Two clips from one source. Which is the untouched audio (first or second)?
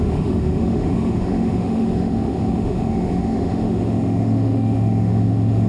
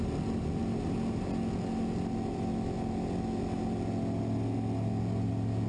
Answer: second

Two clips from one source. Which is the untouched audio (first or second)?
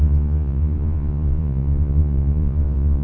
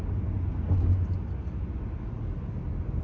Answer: second